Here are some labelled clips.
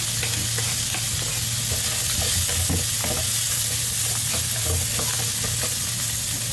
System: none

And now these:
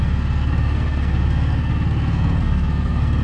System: codec, SNAC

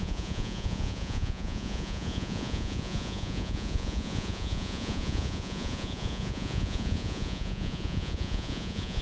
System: vocoder, Vocos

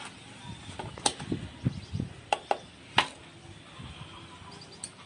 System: none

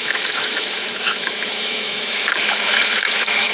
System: autoencoder, DAC-VAE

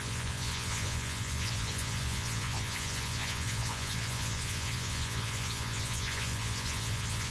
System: vocoder, Vocos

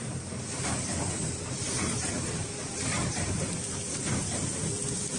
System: none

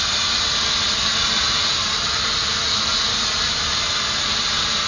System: none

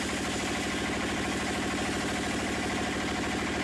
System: none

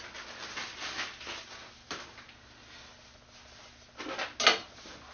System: none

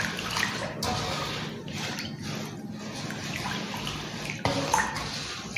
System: none